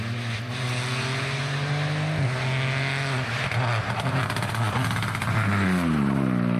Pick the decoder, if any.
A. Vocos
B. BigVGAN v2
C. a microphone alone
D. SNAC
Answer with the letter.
C